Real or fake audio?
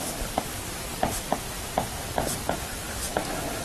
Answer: fake